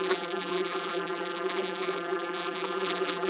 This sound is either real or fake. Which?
fake